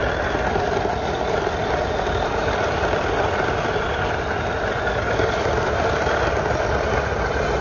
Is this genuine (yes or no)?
yes